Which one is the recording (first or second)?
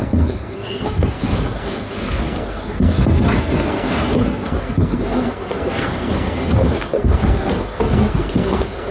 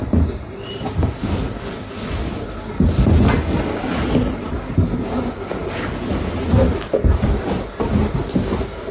second